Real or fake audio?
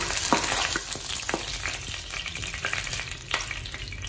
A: real